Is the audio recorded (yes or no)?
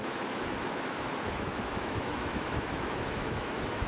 no